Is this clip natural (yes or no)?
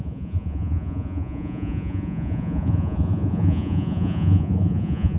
no